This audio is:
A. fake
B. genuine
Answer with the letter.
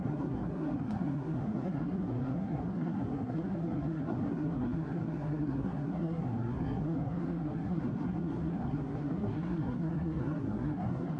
A